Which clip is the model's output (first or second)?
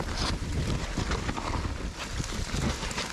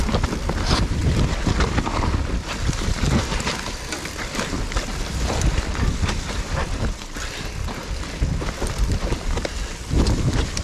second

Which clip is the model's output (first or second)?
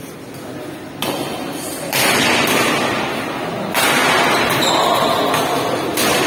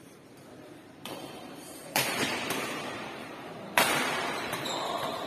second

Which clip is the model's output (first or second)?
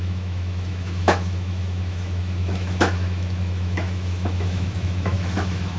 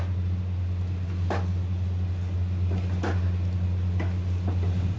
first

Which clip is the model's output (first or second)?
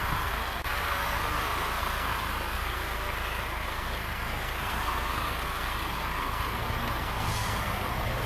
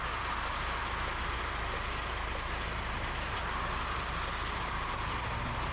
first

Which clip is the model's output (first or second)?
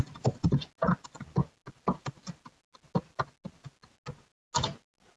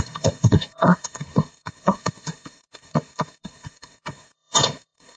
second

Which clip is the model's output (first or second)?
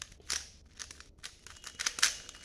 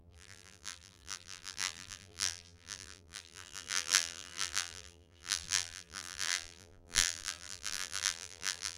second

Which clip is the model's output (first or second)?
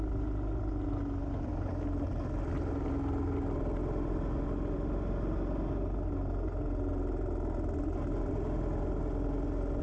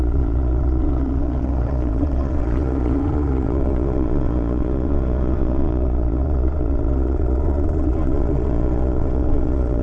second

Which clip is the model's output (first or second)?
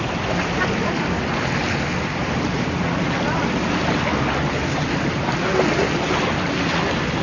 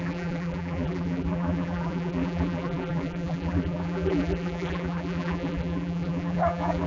second